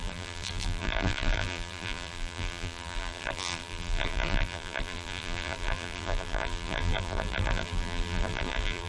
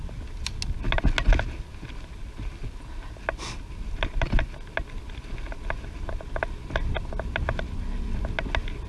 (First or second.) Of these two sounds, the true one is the second